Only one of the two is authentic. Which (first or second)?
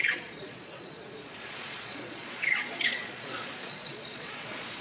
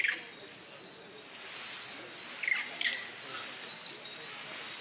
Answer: second